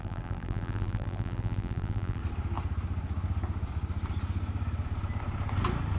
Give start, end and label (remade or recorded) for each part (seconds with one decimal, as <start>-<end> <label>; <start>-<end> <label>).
0.0-2.2 remade; 2.2-6.0 recorded